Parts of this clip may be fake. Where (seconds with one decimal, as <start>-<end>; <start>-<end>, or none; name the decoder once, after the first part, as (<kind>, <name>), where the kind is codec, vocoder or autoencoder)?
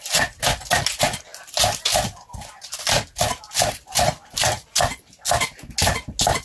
1.3-4.4 (vocoder, BigVGAN v2)